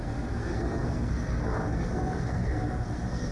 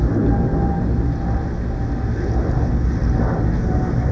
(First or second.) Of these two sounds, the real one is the second